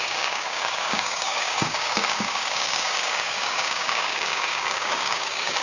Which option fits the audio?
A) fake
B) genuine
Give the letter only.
A